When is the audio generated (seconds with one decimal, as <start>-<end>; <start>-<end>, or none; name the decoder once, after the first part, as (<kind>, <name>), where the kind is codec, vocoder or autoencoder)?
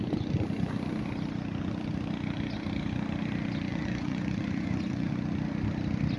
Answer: 3.7-5.1 (vocoder, Vocos)